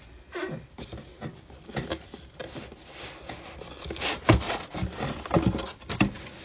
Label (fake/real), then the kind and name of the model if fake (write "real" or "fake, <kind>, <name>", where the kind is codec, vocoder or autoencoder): real